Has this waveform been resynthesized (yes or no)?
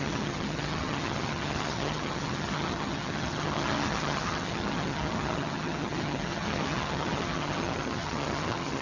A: yes